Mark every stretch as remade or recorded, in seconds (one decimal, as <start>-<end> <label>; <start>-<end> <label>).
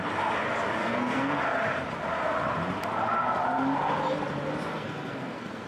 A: 0.0-0.8 recorded; 0.8-1.6 remade; 1.6-4.7 recorded; 4.7-5.7 remade